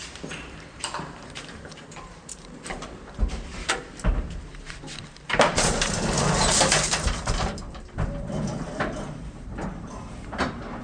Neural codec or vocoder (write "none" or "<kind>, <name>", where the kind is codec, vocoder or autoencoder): vocoder, BigVGAN v2